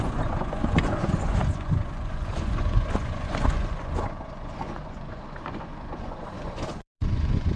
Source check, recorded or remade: remade